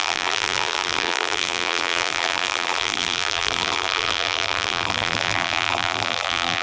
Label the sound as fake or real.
fake